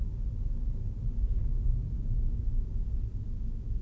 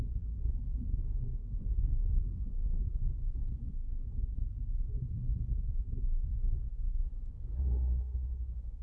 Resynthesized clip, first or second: second